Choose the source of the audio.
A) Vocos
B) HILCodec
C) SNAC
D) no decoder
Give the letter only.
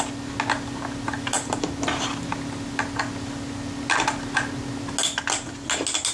D